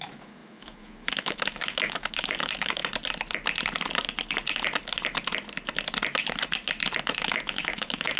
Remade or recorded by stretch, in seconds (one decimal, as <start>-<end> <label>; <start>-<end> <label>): 0.0-2.8 remade; 2.8-7.2 recorded; 7.2-8.2 remade